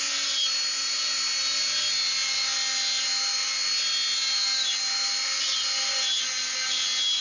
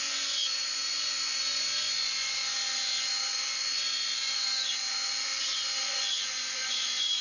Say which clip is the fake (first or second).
second